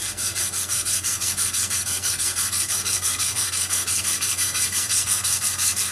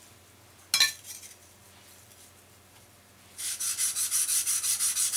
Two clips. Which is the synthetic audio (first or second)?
first